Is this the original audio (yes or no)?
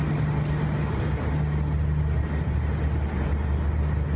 yes